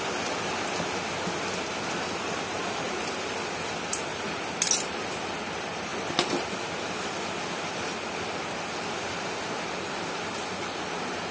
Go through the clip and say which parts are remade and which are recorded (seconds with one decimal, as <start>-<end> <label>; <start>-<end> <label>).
0.0-11.3 recorded